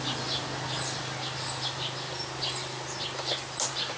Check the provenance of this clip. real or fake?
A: real